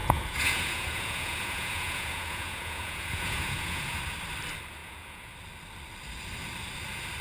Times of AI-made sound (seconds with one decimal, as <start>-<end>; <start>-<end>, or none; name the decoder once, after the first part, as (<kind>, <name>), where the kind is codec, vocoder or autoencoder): 0.0-4.0 (vocoder, Vocos); 4.8-5.3